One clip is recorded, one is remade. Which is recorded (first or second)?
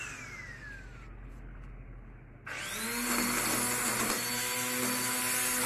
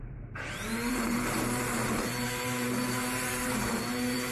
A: first